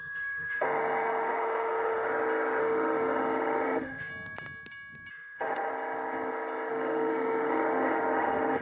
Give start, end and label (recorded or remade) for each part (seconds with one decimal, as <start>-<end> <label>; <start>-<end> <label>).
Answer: 0.0-2.1 remade; 2.1-2.6 recorded; 2.6-4.1 remade; 4.1-5.1 recorded; 5.1-5.7 remade; 5.7-6.7 recorded; 6.7-8.6 remade